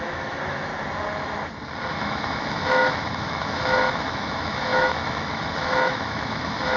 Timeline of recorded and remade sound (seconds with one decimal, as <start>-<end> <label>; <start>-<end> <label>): 0.0-0.7 remade; 0.7-1.9 recorded; 1.9-6.8 remade